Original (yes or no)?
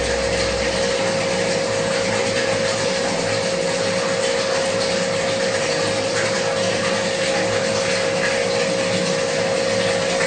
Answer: yes